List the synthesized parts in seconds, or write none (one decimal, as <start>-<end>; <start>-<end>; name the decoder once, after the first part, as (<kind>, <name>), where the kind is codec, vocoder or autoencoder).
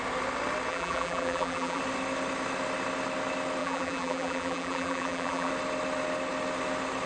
0.7-1.8 (vocoder, BigVGAN v2); 3.6-5.5